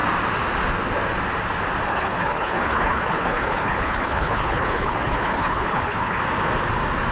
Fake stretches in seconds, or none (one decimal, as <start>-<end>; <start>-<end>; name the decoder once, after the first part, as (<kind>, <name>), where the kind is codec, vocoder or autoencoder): 1.9-6.2 (codec, HILCodec)